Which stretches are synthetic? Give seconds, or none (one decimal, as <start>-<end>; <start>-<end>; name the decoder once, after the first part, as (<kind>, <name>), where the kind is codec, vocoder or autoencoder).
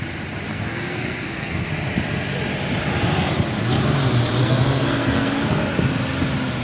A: 0.5-1.7 (codec, SNAC); 4.4-5.6